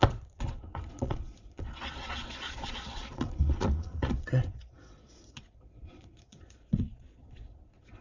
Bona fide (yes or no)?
no